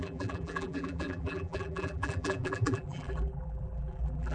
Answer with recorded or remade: remade